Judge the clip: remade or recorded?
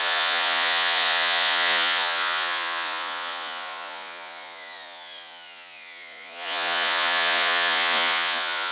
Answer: remade